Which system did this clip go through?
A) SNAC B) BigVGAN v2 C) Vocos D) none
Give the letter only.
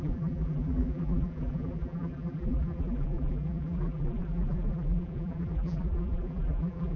B